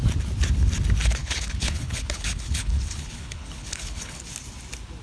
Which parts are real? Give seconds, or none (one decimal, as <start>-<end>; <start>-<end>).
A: 0.0-1.2; 4.2-5.0